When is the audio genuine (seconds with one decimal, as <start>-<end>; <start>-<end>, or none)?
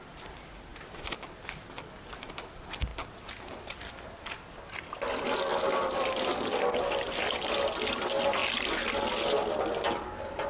0.0-10.5